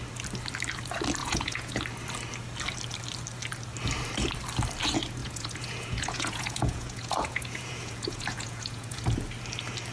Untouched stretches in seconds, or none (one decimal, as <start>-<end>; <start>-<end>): 0.0-1.2; 1.8-5.2; 9.0-9.9

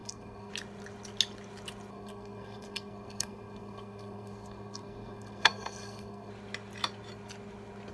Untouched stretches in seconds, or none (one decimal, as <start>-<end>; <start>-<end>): 0.5-1.9; 6.3-7.9

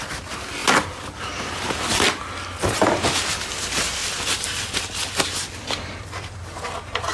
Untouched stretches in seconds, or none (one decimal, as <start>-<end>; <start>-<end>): 0.0-7.1

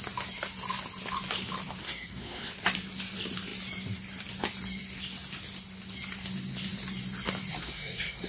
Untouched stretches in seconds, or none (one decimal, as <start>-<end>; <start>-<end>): 0.0-1.8; 2.5-7.5

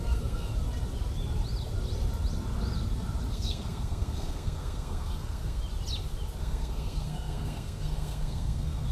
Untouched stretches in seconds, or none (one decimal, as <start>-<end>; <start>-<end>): 0.5-3.3; 5.6-6.4

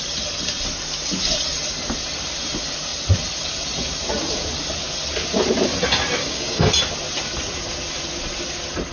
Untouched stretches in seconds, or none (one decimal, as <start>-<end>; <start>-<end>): 0.0-6.2; 6.7-8.9

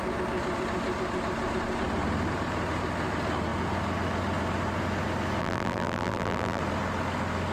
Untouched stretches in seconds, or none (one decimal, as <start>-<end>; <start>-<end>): 0.0-5.4; 6.6-7.5